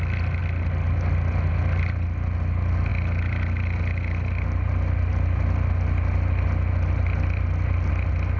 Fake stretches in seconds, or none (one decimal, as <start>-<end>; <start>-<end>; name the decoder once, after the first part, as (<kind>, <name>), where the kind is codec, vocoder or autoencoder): none